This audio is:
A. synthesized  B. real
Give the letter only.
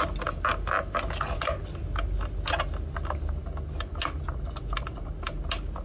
B